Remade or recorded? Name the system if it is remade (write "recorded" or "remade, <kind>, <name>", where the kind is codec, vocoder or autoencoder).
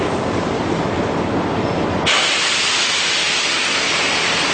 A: recorded